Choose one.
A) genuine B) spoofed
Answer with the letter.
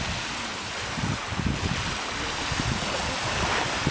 A